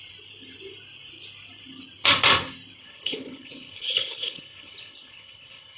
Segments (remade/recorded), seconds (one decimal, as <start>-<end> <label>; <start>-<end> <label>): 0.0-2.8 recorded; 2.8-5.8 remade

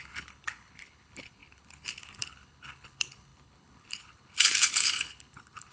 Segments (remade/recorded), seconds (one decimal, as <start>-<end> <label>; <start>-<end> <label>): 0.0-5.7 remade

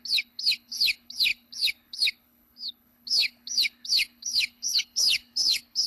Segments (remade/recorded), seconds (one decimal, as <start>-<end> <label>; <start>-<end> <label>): 0.0-5.9 remade

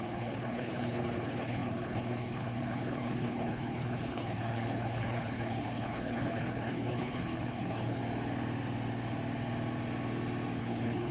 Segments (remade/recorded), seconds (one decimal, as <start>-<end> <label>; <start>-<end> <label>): 0.0-8.0 remade; 8.0-10.6 recorded; 10.6-11.1 remade

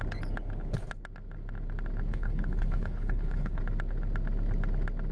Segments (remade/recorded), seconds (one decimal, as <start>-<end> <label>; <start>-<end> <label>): 0.0-2.1 recorded; 2.1-3.6 remade; 3.6-5.1 recorded

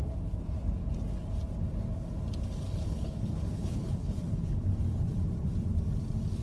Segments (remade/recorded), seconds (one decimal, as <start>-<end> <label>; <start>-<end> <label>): 0.0-2.8 recorded; 2.8-4.5 remade; 4.5-6.4 recorded